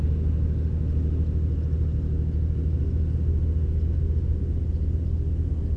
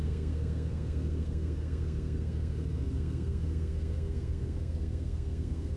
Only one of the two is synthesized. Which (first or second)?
second